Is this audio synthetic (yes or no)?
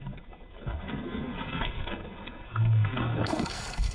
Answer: yes